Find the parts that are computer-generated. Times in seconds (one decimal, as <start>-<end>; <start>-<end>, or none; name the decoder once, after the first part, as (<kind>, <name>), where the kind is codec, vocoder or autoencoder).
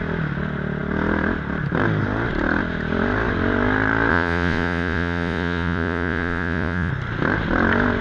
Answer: 4.1-6.9 (vocoder, Vocos)